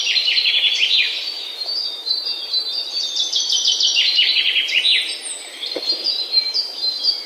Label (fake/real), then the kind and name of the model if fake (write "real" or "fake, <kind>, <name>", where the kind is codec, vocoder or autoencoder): fake, vocoder, BigVGAN v2